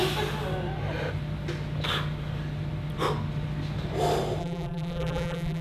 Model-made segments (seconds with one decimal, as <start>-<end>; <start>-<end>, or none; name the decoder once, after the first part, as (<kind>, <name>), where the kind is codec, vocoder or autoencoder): 4.4-5.6 (vocoder, BigVGAN v2)